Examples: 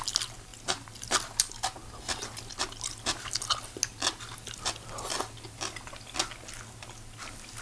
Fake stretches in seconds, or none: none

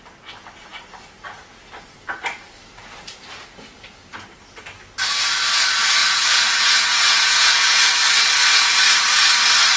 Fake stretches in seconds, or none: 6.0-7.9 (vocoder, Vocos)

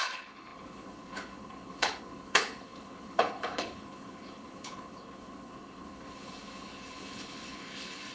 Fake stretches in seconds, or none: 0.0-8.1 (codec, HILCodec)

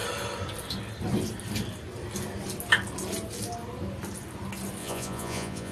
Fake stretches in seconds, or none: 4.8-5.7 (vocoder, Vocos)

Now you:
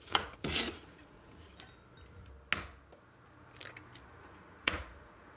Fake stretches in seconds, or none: 0.0-1.5 (vocoder, Vocos); 4.2-5.4

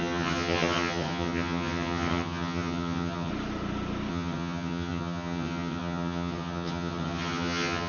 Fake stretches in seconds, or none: 0.0-3.3 (vocoder, HiFi-GAN); 4.1-7.9

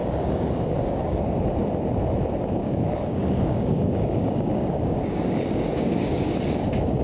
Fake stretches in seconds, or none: 0.0-1.4 (codec, DAC); 2.6-7.0

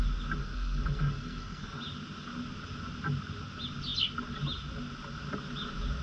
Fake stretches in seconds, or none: 0.4-1.8 (codec, SNAC)